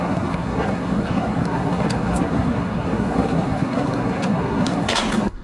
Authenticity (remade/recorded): remade